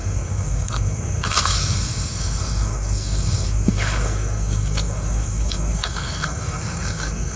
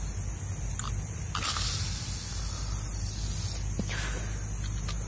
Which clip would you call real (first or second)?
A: second